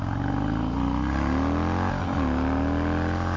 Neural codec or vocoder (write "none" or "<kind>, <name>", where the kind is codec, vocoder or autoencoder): none